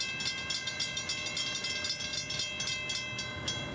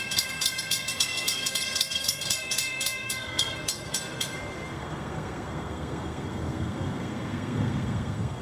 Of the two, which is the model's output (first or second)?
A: second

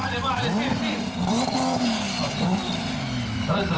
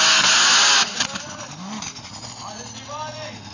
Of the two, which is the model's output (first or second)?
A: first